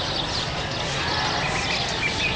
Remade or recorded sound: recorded